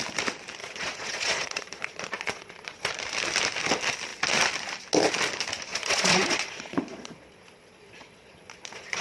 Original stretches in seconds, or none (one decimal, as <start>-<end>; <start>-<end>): 0.0-0.6; 2.9-5.7